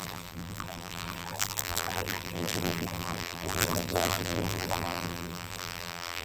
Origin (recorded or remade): remade